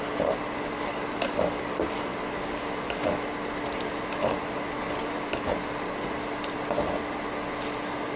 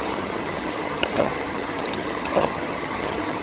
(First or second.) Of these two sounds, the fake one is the second